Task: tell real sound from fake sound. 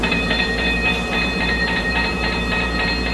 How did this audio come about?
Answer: fake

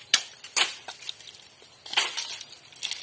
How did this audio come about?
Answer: real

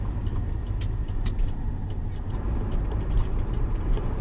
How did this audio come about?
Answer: fake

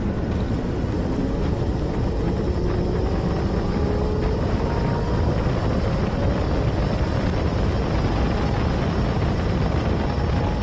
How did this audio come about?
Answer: real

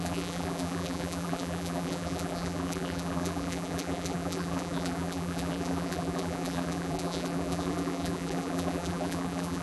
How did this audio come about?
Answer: fake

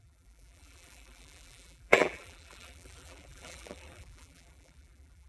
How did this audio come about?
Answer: fake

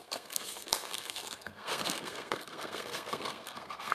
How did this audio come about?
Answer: fake